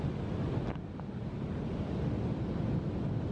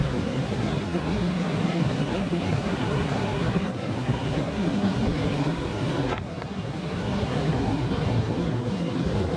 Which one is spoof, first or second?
second